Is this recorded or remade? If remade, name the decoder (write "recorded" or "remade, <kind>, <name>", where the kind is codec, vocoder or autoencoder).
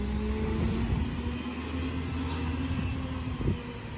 recorded